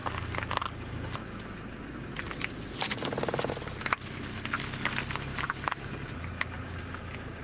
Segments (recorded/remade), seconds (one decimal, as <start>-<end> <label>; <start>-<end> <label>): 0.0-7.4 recorded